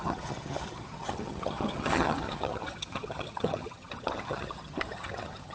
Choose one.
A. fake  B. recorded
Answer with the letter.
A